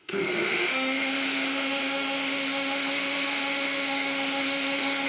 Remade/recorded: remade